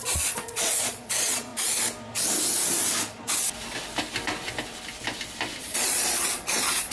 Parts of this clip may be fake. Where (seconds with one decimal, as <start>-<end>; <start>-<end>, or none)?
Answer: 0.0-1.5; 5.6-6.9